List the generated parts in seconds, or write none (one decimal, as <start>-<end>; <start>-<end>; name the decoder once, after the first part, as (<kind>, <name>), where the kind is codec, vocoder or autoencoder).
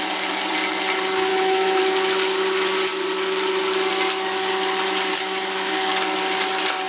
1.3-1.8 (autoencoder, DAC-VAE); 5.1-5.7